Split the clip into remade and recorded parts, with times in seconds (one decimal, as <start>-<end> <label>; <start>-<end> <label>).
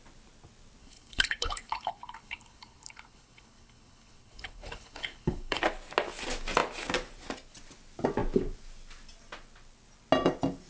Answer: 0.0-0.8 recorded; 0.8-5.6 remade; 5.6-10.7 recorded